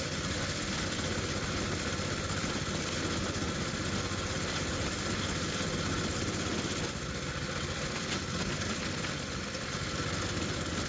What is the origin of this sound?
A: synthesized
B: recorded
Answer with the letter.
B